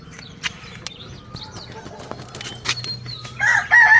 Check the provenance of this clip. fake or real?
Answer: real